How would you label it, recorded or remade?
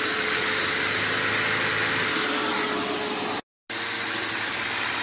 recorded